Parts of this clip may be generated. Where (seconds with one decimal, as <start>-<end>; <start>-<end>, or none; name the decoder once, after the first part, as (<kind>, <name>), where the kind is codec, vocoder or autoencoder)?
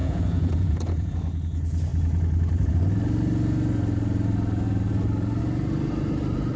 0.0-1.1 (vocoder, Vocos)